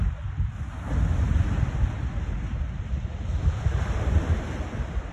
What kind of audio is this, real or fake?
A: real